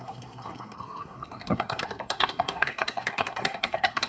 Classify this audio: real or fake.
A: fake